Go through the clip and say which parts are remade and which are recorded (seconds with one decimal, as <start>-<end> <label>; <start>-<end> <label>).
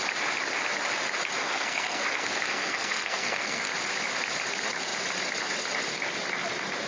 0.0-1.4 recorded; 1.4-3.7 remade; 3.7-6.9 recorded